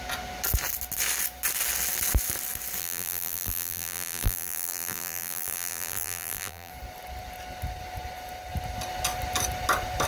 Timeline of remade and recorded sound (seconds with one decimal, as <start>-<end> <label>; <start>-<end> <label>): 0.0-2.8 recorded; 2.8-6.7 remade; 6.7-10.1 recorded